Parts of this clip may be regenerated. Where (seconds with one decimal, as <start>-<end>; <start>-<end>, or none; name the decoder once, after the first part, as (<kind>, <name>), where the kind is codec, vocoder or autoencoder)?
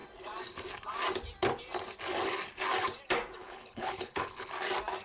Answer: 3.4-4.5 (codec, HILCodec)